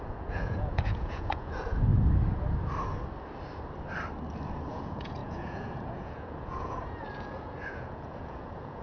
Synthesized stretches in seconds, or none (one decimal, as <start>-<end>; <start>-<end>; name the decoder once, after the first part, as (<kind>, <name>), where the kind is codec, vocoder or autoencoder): 0.0-1.9 (vocoder, Vocos); 4.7-8.8

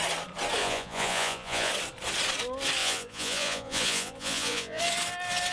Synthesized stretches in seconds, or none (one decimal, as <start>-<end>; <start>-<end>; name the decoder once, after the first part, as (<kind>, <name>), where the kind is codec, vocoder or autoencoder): 0.6-1.7 (vocoder, Vocos); 2.8-4.8

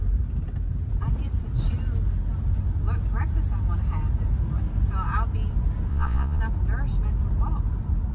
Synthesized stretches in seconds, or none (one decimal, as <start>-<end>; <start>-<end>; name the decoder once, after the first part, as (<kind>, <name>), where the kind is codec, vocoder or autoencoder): 5.9-6.4 (vocoder, Vocos)

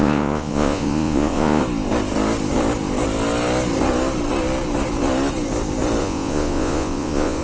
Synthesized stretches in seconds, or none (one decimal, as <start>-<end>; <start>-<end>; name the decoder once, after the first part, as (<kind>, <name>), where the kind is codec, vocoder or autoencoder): 0.0-1.6 (vocoder, Vocos); 6.0-7.4

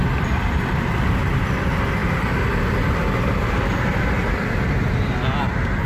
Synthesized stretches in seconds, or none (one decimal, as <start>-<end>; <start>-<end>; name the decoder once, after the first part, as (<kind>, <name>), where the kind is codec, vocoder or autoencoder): none